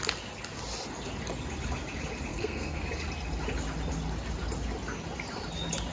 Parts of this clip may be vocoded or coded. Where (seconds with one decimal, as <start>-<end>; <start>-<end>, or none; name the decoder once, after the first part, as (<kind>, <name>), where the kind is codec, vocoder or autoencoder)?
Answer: 2.3-2.8 (codec, SNAC)